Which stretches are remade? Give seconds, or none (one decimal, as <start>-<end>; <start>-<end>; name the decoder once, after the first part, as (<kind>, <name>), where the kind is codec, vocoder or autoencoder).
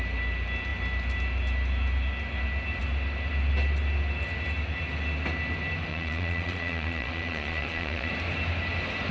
5.9-8.1 (vocoder, Vocos)